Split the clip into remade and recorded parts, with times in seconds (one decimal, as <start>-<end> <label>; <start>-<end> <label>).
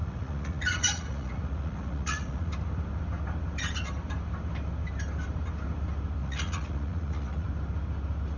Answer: 0.0-2.5 remade; 2.5-6.2 recorded; 6.2-7.5 remade; 7.5-8.4 recorded